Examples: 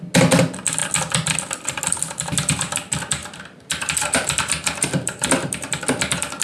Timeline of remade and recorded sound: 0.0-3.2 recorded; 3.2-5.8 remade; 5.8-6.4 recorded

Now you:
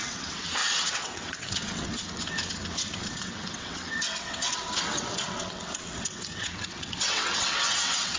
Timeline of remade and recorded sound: 0.0-8.2 remade

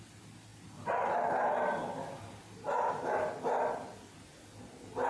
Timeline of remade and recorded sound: 0.0-5.1 recorded

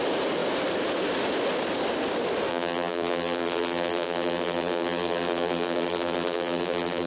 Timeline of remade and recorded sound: 0.0-2.5 recorded; 2.5-7.1 remade

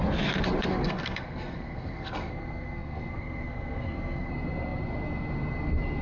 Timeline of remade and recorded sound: 0.0-0.7 recorded; 0.7-4.3 remade; 4.3-6.0 recorded

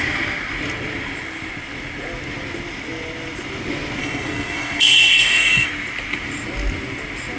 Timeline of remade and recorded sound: 0.0-4.0 recorded; 4.0-5.7 remade; 5.7-7.4 recorded

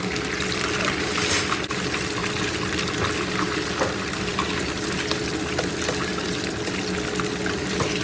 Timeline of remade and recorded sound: 0.0-8.0 recorded